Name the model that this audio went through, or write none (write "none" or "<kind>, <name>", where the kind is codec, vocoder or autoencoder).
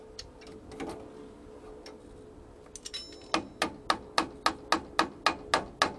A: none